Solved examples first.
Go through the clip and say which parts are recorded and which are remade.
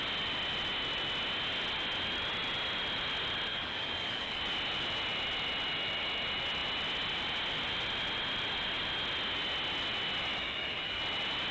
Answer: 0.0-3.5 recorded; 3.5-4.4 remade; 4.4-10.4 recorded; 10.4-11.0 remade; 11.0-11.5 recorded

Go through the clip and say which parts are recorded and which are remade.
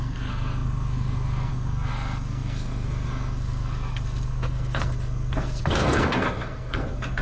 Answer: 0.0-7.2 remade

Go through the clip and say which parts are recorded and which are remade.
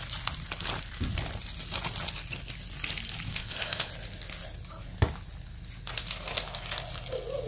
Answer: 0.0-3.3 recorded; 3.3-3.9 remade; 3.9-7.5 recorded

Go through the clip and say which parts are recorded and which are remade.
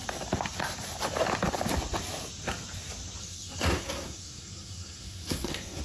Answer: 0.0-3.2 recorded; 3.2-5.8 remade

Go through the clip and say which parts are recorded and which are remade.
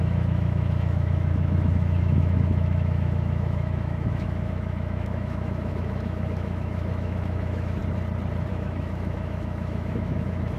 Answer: 0.0-7.8 remade; 7.8-8.5 recorded; 8.5-10.6 remade